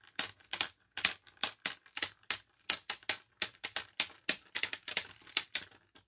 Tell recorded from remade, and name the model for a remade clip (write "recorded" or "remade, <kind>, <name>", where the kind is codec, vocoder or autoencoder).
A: recorded